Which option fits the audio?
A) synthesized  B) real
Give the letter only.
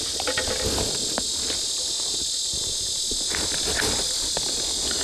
B